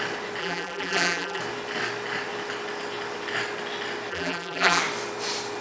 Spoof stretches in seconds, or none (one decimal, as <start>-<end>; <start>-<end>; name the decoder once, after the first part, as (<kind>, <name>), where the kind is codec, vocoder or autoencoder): 0.4-1.4 (vocoder, BigVGAN v2); 4.1-4.8